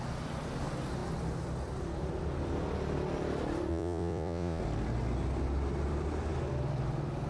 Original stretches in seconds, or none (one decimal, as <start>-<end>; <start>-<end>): 0.0-3.7; 4.6-7.3